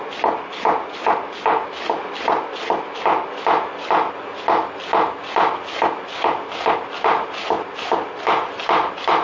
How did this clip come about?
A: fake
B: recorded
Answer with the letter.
B